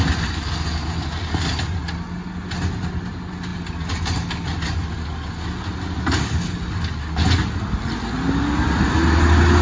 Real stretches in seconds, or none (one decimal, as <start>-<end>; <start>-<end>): 0.0-9.6